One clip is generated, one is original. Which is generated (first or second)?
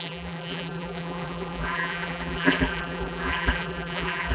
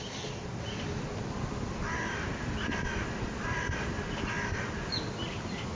first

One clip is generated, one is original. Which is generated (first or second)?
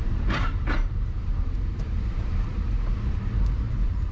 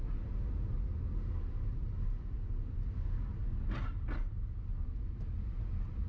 first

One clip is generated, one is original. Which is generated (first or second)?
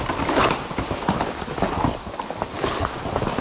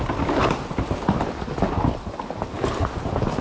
first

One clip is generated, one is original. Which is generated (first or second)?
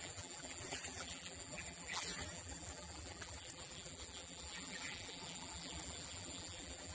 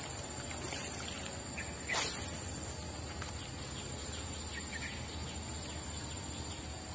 first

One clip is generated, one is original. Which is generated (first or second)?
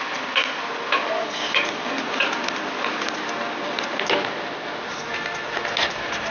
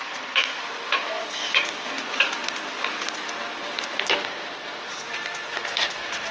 second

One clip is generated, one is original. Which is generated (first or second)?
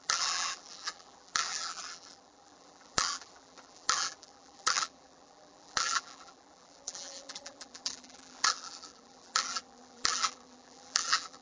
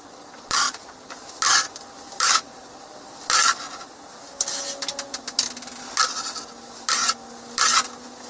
first